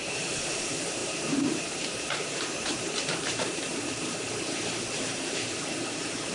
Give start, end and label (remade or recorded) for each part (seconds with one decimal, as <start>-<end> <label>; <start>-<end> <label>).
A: 0.0-1.0 recorded; 1.0-4.3 remade; 4.3-6.3 recorded